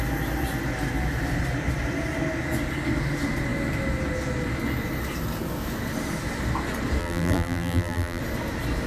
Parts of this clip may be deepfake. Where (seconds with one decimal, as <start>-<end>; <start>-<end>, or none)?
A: 7.0-8.2